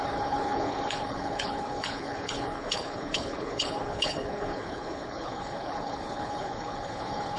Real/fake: fake